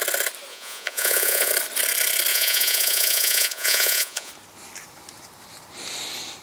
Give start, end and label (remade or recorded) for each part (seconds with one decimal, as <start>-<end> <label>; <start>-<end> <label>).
0.0-0.5 recorded; 0.5-1.5 remade; 1.5-2.3 recorded; 2.3-4.3 remade; 4.3-6.4 recorded